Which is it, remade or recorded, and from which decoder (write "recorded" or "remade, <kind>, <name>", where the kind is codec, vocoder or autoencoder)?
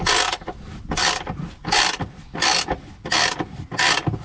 recorded